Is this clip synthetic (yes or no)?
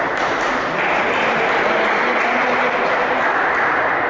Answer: no